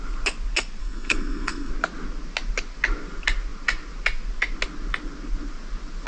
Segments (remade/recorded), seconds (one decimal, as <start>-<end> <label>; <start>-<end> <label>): 0.0-0.8 recorded; 0.8-1.7 remade; 1.7-6.1 recorded